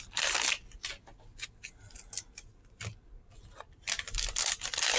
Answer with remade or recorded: recorded